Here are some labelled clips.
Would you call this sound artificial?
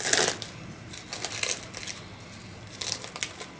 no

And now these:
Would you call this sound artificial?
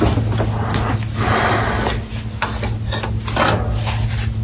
no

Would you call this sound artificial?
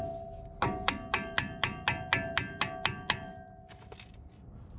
no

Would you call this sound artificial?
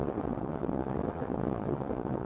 yes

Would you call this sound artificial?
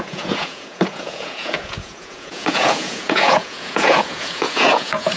yes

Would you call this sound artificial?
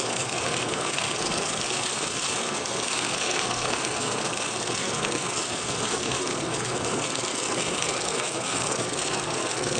yes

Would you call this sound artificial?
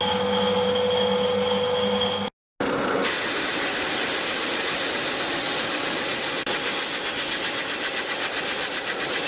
no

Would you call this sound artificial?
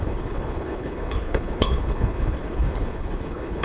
yes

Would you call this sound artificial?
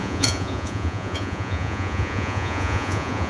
yes